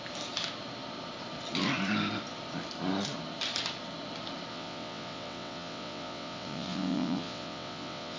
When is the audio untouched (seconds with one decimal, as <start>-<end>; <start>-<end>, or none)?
0.0-4.5